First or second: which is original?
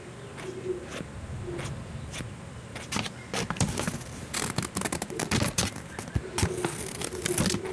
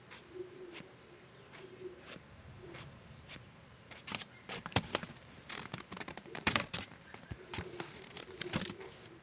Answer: first